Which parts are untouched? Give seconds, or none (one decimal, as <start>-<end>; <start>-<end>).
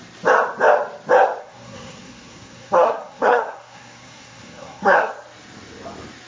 0.0-1.4; 5.1-6.3